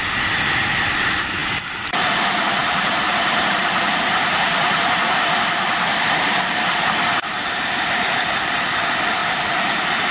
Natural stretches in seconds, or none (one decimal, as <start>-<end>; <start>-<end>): 9.2-10.1